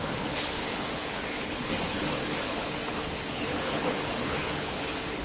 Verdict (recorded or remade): remade